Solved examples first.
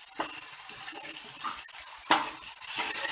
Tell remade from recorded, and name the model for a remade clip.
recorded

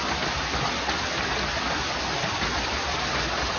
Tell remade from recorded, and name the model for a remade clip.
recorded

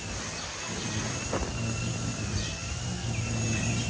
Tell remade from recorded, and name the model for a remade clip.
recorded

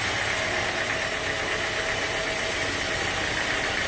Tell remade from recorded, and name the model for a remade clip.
recorded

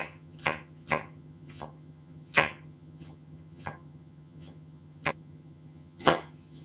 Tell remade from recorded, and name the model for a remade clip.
remade, vocoder, HiFi-GAN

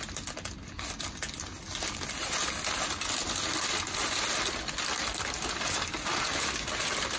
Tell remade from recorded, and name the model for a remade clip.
recorded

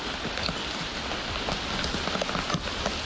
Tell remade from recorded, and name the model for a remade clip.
recorded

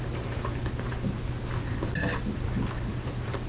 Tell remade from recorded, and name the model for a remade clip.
recorded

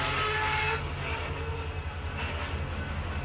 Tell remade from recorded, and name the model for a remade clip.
recorded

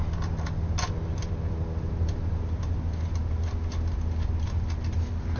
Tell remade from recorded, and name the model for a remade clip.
recorded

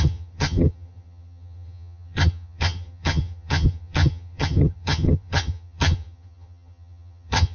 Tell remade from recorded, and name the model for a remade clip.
remade, vocoder, HiFi-GAN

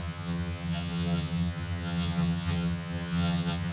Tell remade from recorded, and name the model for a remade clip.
remade, vocoder, HiFi-GAN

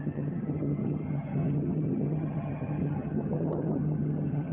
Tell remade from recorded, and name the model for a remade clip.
remade, vocoder, HiFi-GAN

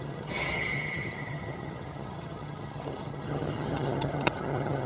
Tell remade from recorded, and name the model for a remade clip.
remade, vocoder, HiFi-GAN